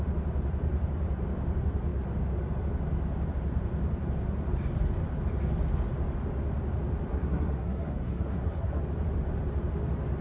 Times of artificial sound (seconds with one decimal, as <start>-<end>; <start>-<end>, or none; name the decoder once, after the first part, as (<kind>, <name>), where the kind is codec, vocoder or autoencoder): 7.1-8.8 (codec, SNAC)